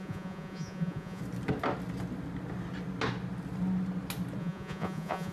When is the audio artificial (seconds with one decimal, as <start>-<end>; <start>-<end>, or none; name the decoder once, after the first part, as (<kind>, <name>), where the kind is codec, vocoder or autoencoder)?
0.0-1.2 (vocoder, Vocos); 4.4-5.3